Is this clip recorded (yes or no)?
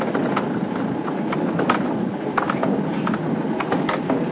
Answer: yes